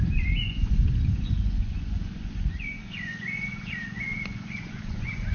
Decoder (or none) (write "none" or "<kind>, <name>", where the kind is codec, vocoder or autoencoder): vocoder, Vocos